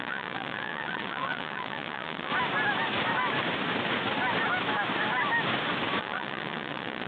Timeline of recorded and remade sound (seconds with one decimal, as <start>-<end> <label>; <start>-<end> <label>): 0.0-2.3 remade; 2.3-6.0 recorded; 6.0-7.1 remade